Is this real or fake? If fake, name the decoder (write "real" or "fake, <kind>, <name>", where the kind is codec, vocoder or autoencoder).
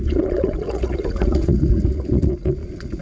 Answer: fake, vocoder, Vocos